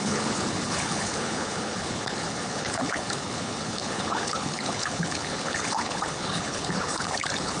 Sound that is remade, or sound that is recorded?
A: remade